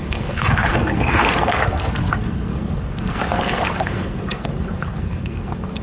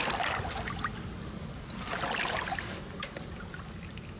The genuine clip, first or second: second